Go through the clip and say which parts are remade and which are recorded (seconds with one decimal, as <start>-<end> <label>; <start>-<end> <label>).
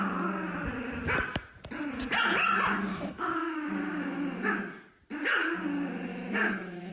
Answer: 0.0-2.9 recorded; 2.9-4.9 remade; 4.9-6.1 recorded; 6.1-6.9 remade